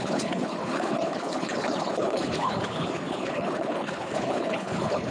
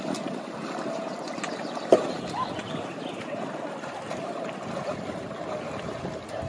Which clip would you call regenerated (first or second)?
first